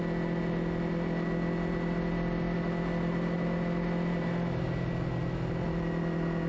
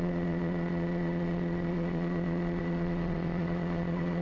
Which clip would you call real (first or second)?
first